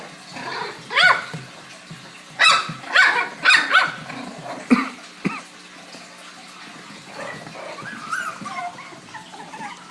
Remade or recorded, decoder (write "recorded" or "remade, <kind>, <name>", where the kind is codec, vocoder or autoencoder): recorded